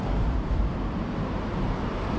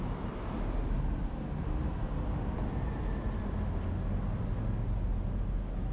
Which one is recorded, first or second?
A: second